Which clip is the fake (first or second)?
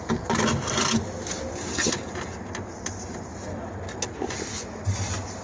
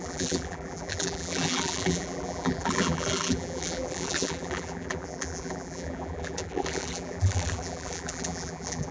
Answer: second